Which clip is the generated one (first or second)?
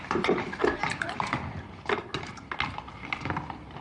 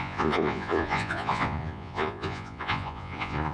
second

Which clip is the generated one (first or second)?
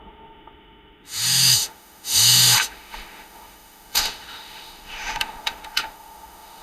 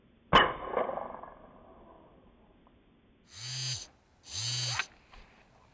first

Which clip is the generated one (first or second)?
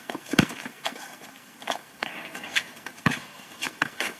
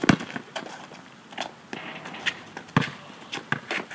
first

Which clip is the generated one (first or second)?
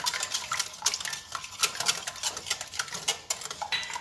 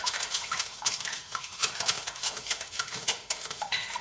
second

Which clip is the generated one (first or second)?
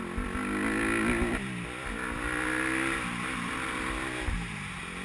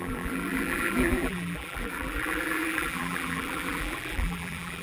second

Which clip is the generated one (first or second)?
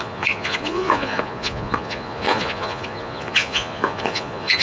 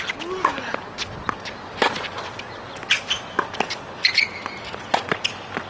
first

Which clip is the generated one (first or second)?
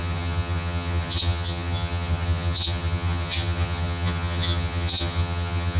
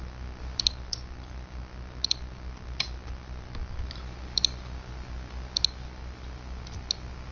first